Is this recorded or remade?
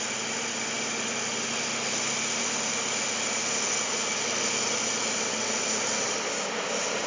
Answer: recorded